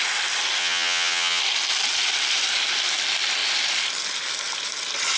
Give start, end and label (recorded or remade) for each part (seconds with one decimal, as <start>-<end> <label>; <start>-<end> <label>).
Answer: 0.0-0.6 recorded; 0.6-1.4 remade; 1.4-5.2 recorded